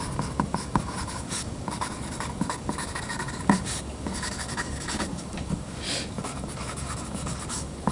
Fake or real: fake